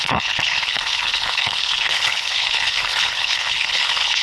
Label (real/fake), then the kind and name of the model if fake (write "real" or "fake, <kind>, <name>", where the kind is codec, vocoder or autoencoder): fake, codec, HILCodec